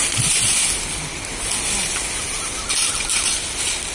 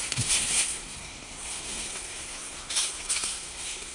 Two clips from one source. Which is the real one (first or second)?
first